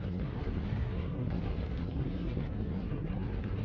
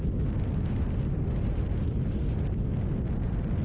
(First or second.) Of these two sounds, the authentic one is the second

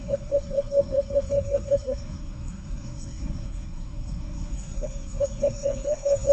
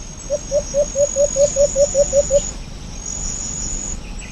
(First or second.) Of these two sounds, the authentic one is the second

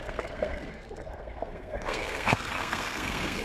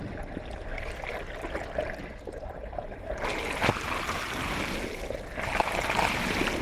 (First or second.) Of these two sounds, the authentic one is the second